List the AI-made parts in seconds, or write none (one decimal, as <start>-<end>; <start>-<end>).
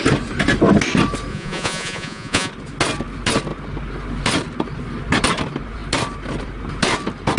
1.3-2.5